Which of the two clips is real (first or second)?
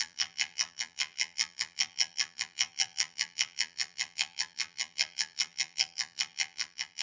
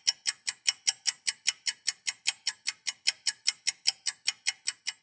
second